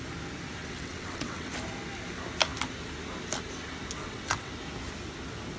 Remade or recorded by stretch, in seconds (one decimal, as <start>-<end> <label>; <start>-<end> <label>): 0.0-0.6 recorded; 0.6-1.5 remade; 1.5-4.0 recorded; 4.0-4.5 remade; 4.5-5.6 recorded